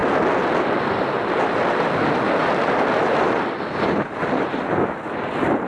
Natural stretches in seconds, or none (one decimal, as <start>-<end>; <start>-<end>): 0.0-5.7